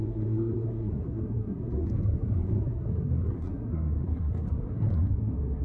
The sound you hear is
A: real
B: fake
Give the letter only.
B